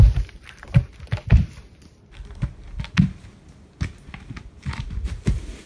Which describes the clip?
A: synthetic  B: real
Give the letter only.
B